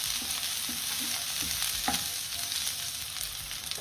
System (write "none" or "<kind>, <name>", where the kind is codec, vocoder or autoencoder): none